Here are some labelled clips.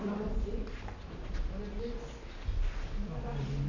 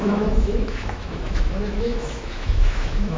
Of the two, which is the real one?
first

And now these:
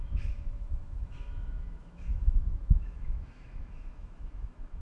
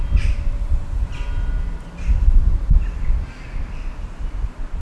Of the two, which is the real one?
second